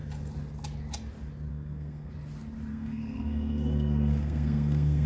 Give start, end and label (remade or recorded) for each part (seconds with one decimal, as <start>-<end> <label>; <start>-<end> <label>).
0.0-1.5 recorded; 1.5-2.1 remade; 2.1-2.7 recorded; 2.7-5.1 remade